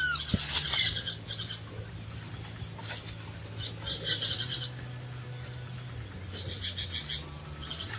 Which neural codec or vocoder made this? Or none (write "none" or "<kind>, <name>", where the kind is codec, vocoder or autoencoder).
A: none